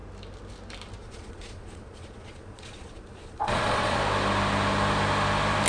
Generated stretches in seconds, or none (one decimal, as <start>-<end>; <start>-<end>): 1.0-4.0